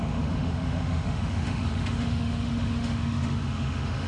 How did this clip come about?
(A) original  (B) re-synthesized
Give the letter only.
B